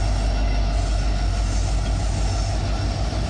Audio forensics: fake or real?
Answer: real